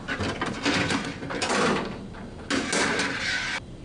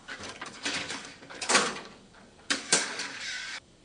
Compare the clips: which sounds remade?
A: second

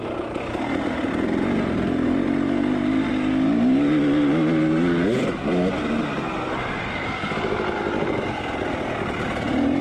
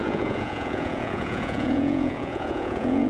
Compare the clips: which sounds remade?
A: second